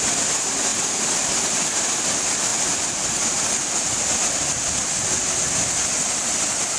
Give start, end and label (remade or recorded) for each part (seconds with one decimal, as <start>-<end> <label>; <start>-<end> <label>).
0.0-6.8 recorded